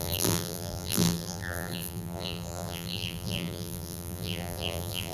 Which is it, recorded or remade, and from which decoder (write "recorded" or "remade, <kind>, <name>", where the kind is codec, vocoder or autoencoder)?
remade, vocoder, BigVGAN v2